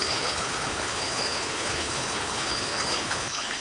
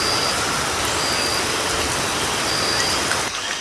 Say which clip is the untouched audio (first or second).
second